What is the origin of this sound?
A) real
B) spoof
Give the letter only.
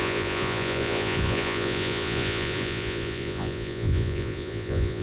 B